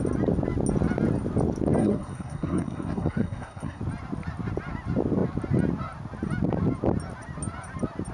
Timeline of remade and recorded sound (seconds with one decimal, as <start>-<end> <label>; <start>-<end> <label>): 0.0-1.8 recorded; 1.8-3.8 remade; 3.8-8.1 recorded